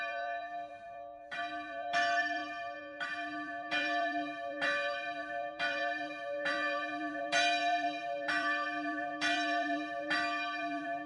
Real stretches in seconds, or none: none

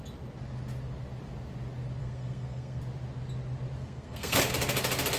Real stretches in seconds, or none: 0.0-2.0; 2.8-3.8; 4.5-5.2

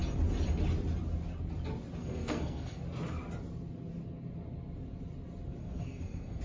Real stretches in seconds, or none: 0.0-2.0; 2.8-5.6